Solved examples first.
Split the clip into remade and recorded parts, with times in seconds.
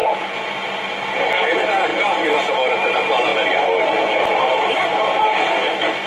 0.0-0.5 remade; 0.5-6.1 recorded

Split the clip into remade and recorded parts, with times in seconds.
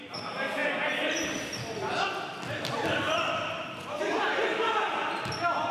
0.0-5.7 recorded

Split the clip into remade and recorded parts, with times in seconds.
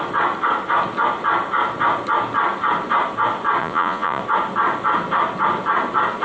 0.0-3.6 recorded; 3.6-4.2 remade; 4.2-6.2 recorded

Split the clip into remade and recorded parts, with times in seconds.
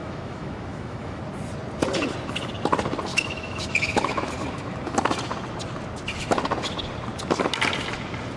0.0-1.2 remade; 1.2-3.1 recorded; 3.1-4.3 remade; 4.3-8.4 recorded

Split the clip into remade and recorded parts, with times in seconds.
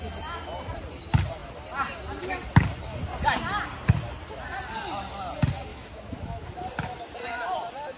0.0-5.7 recorded; 5.7-6.5 remade; 6.5-8.0 recorded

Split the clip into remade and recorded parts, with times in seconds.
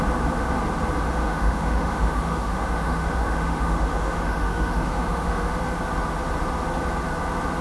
0.0-1.2 recorded; 1.2-5.5 remade; 5.5-7.6 recorded